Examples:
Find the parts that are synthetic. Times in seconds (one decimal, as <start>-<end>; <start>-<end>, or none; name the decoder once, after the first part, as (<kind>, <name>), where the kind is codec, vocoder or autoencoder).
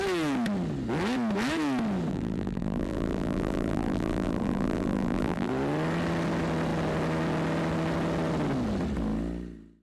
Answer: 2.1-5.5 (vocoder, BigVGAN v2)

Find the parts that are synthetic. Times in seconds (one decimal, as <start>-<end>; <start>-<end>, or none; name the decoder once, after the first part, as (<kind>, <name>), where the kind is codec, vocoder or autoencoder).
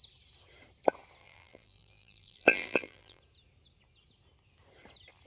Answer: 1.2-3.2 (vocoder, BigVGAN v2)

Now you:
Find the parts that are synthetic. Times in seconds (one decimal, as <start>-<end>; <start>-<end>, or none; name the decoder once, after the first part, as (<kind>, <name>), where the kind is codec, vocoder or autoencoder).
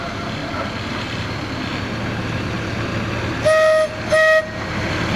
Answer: 0.0-0.4 (vocoder, BigVGAN v2); 1.8-2.9; 4.4-5.2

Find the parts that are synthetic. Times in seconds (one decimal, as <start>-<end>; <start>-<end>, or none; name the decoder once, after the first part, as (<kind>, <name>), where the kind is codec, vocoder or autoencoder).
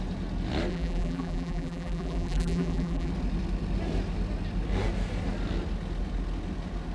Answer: 0.7-3.1 (vocoder, BigVGAN v2)